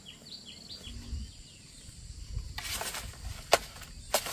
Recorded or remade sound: recorded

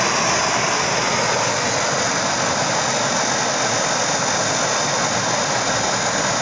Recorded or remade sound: recorded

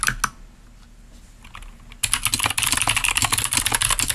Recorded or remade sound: recorded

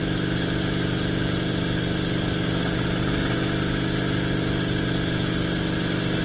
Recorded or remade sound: recorded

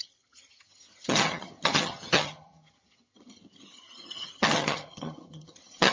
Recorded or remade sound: remade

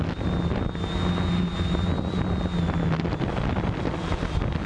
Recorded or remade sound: recorded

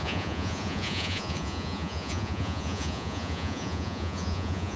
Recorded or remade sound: remade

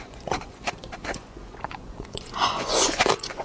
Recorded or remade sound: remade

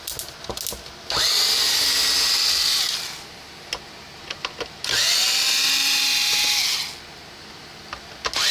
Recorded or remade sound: recorded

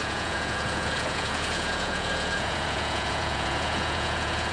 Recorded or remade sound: remade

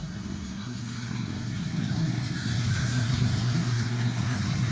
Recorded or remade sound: remade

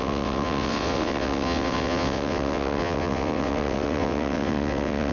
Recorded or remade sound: remade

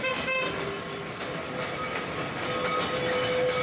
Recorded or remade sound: recorded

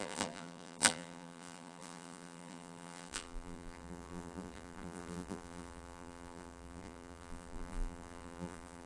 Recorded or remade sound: remade